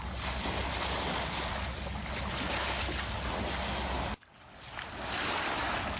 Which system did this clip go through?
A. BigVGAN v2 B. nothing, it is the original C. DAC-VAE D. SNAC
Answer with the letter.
B